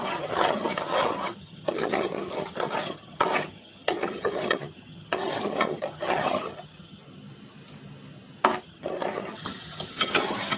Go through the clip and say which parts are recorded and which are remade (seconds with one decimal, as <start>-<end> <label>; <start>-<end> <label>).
0.0-7.0 remade; 7.0-8.6 recorded; 8.6-10.6 remade